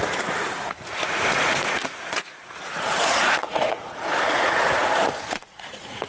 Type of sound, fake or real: fake